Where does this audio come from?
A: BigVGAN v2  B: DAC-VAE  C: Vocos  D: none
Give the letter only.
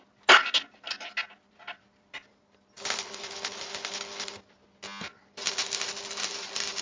D